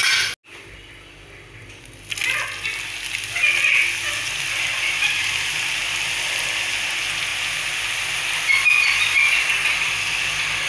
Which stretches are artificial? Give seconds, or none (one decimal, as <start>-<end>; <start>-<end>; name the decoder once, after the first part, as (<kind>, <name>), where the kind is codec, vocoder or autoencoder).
none